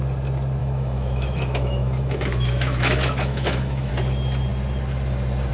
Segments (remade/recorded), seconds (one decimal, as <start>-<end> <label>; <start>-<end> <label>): 0.0-0.6 recorded; 0.6-3.9 remade; 3.9-5.5 recorded